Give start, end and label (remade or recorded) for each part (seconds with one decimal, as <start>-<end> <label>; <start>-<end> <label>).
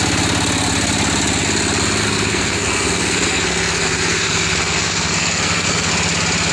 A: 0.0-2.0 recorded; 2.0-5.9 remade; 5.9-6.5 recorded